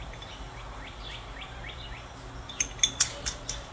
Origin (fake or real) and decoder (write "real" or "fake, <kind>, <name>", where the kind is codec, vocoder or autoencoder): real